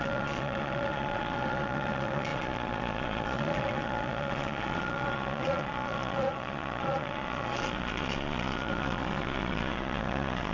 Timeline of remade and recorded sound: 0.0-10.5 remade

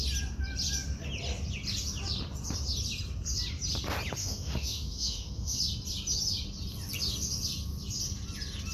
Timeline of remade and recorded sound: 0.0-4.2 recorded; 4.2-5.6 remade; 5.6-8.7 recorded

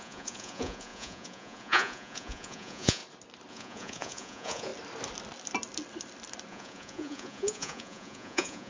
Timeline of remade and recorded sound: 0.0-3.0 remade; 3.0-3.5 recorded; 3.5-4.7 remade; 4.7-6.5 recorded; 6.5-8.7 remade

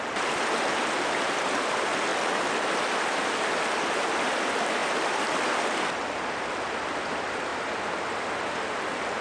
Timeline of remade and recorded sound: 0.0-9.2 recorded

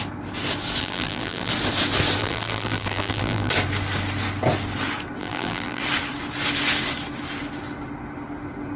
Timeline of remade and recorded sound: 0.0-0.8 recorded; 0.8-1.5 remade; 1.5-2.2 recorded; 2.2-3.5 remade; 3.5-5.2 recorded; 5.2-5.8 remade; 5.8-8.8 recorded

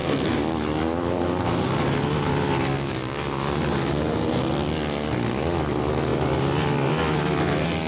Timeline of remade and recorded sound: 0.0-7.9 recorded

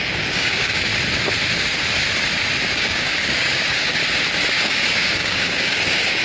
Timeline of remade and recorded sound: 0.0-0.9 remade; 0.9-2.7 recorded; 2.7-4.0 remade; 4.0-4.5 recorded; 4.5-6.2 remade